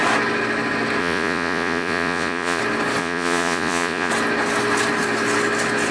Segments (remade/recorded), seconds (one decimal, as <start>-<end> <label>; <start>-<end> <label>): 0.0-1.0 recorded; 1.0-2.6 remade; 2.6-3.0 recorded; 3.0-4.1 remade; 4.1-5.9 recorded